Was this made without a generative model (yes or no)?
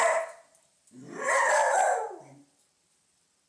yes